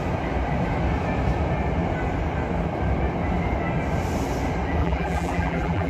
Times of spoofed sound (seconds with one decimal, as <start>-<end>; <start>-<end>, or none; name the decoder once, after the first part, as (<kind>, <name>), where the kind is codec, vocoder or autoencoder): 4.8-5.9 (vocoder, BigVGAN v2)